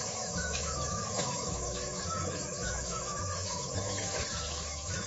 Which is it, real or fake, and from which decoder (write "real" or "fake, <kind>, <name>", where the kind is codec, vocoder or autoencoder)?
fake, autoencoder, DAC-VAE